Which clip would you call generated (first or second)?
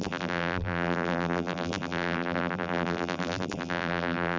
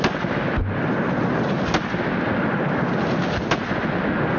first